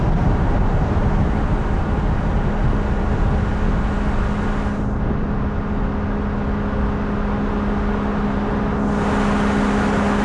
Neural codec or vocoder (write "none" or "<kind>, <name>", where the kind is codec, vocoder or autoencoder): none